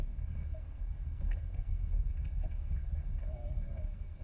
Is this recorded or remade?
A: remade